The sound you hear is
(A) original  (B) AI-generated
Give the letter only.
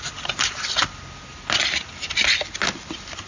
A